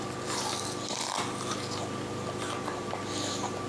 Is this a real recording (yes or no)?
yes